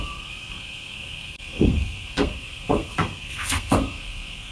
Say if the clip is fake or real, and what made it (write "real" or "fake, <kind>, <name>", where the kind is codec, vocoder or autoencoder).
fake, codec, SNAC